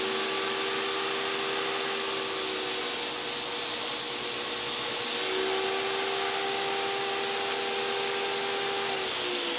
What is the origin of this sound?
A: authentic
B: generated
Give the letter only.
A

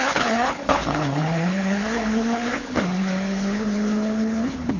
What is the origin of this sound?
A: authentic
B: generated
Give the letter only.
B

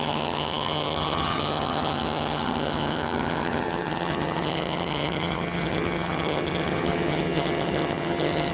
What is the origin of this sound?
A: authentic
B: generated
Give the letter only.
B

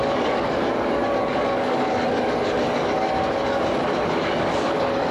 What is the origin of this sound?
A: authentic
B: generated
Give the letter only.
B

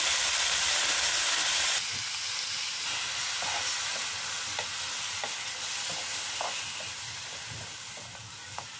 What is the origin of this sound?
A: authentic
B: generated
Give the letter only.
A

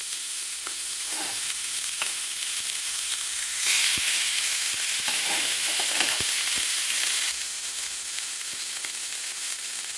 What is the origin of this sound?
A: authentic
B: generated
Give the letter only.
B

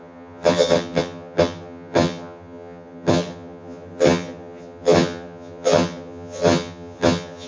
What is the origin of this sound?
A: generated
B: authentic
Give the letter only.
A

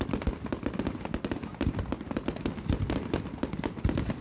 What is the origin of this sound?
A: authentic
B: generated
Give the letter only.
A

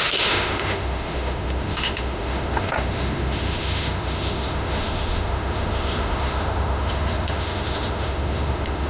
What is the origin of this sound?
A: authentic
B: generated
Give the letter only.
B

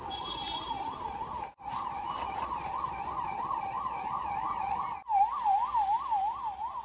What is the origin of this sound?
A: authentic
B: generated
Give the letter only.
A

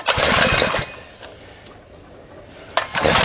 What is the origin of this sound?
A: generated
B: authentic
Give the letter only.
B